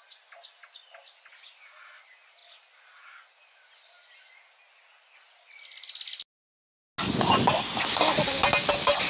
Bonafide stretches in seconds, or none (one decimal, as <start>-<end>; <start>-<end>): 0.0-9.1

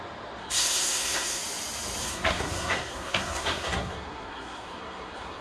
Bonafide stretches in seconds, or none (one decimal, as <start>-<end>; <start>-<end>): 0.0-0.4; 1.4-2.0

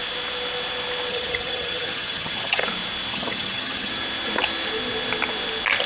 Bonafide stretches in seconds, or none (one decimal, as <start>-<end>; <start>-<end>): 0.0-1.1; 2.6-3.1; 3.9-5.9

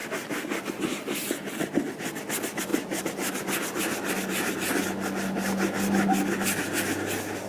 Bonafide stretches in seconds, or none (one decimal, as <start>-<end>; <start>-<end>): 0.0-7.5

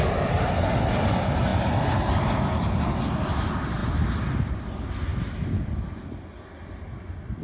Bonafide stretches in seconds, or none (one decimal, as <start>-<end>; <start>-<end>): 0.0-7.4